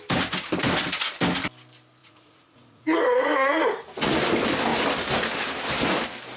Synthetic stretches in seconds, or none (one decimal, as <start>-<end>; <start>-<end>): 2.0-4.1